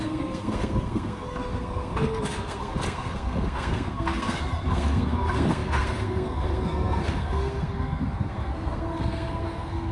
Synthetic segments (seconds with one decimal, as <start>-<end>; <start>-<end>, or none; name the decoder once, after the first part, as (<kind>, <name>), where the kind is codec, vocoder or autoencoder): 0.0-9.9 (codec, SNAC)